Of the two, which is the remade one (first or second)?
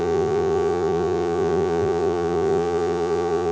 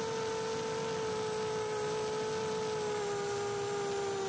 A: first